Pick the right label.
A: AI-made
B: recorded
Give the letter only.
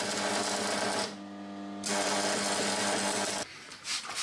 B